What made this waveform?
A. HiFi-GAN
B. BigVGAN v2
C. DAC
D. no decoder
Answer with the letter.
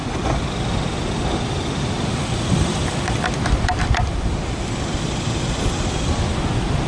B